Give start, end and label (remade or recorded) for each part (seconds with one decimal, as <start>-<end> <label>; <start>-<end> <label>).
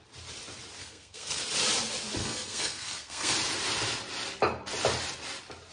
0.0-0.8 recorded; 0.8-1.4 remade; 1.4-2.2 recorded; 2.2-3.3 remade; 3.3-5.7 recorded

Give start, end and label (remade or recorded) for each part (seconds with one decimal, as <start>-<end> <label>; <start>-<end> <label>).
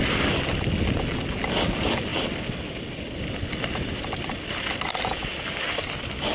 0.0-6.3 recorded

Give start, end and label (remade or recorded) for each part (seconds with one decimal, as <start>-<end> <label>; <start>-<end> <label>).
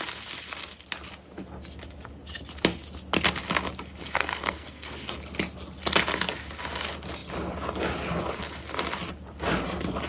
0.0-4.0 recorded; 4.0-5.1 remade; 5.1-10.1 recorded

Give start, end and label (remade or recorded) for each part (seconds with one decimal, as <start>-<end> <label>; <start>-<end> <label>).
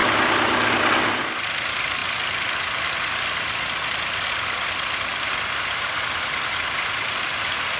0.0-7.8 recorded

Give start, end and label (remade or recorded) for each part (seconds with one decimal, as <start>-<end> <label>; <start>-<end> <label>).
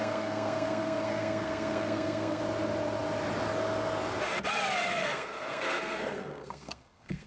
0.0-2.4 remade; 2.4-4.9 recorded; 4.9-7.3 remade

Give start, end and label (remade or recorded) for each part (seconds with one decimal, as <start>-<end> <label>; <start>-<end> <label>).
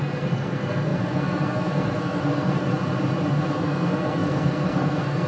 0.0-2.7 remade; 2.7-3.3 recorded; 3.3-5.3 remade